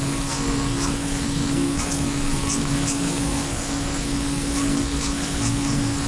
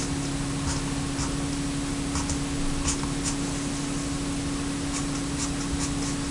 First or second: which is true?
second